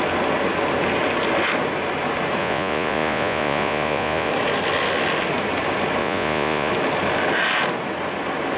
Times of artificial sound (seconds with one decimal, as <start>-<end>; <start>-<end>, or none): 2.4-4.3; 6.0-6.7